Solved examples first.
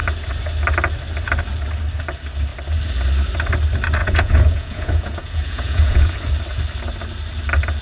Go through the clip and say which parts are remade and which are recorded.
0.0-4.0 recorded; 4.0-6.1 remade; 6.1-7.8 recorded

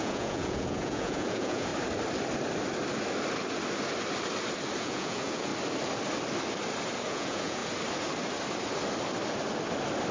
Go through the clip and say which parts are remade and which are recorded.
0.0-1.7 remade; 1.7-4.8 recorded; 4.8-5.5 remade; 5.5-7.1 recorded; 7.1-7.6 remade; 7.6-10.1 recorded

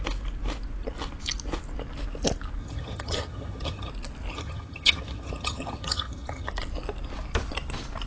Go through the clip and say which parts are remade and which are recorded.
0.0-2.6 recorded; 2.6-3.9 remade; 3.9-4.3 recorded; 4.3-6.5 remade; 6.5-8.1 recorded

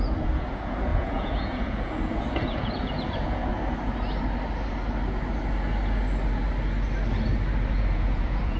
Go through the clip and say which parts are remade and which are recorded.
0.0-3.5 remade; 3.5-7.7 recorded; 7.7-8.6 remade

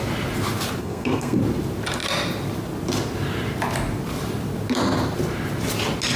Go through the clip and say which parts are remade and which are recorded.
0.0-0.8 recorded; 0.8-1.4 remade; 1.4-6.2 recorded

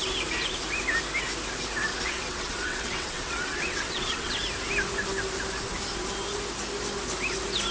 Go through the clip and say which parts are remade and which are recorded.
0.0-1.9 recorded; 1.9-4.3 remade; 4.3-7.7 recorded